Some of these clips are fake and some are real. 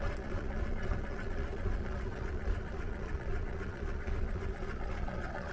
fake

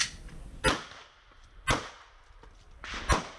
real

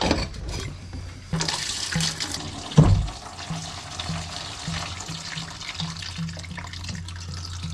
real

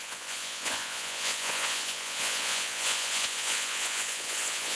fake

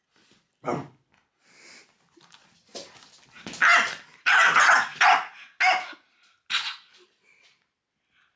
real